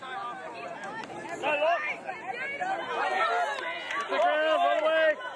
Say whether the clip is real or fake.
real